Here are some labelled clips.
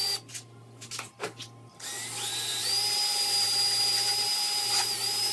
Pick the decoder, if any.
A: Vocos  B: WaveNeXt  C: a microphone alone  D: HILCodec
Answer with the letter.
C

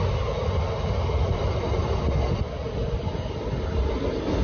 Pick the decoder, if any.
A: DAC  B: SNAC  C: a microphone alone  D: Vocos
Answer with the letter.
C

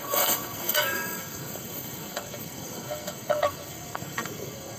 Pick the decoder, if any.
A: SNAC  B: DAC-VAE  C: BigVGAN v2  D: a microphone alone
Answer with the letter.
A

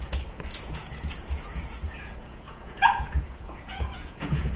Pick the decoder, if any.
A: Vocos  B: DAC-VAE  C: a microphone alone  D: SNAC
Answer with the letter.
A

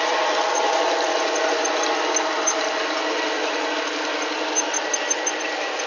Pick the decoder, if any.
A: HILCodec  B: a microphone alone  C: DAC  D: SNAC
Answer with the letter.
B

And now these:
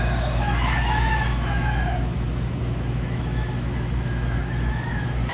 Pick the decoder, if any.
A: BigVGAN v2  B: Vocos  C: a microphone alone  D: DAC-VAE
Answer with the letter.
D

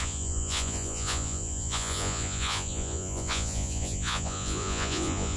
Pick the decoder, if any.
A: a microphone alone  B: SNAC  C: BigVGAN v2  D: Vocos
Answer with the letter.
D